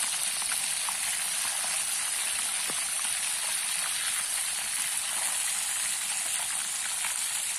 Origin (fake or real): real